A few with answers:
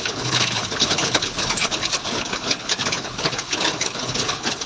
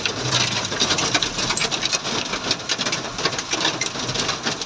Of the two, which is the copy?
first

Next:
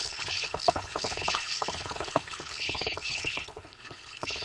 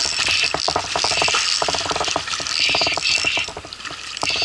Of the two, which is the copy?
first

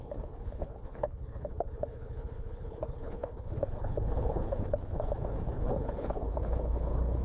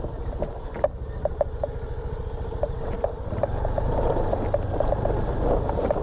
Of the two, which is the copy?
first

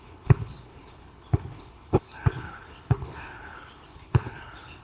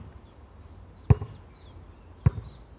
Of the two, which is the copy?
first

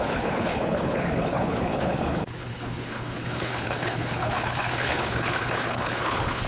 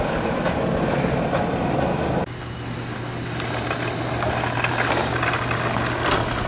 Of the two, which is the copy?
first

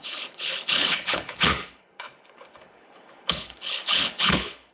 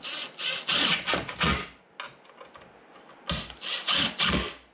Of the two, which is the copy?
first